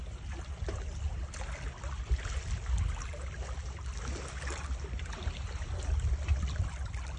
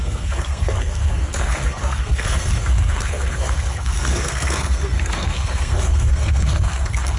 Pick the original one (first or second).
first